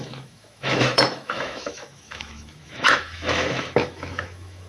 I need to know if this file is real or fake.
fake